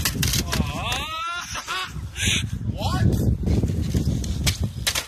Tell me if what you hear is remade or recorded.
recorded